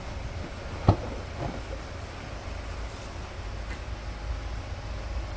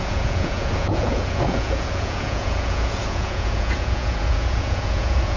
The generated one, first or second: second